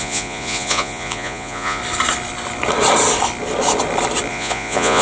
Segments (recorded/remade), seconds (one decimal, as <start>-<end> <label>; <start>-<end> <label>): 0.0-1.8 remade; 1.8-4.3 recorded; 4.3-5.0 remade